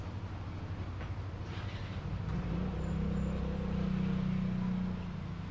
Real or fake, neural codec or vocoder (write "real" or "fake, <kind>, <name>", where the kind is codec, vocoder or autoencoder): real